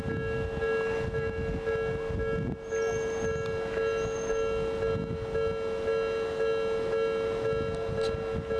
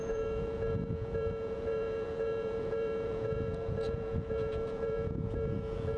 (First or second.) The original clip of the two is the first